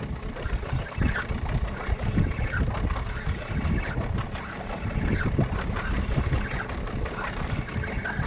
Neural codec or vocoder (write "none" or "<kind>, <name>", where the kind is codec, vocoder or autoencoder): none